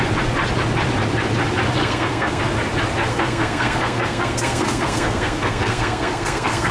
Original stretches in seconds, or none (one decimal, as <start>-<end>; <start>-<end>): 0.0-1.8; 2.4-3.1